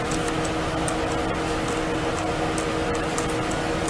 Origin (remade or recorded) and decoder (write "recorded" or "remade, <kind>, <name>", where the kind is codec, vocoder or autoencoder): recorded